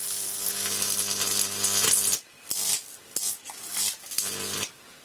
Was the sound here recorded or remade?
recorded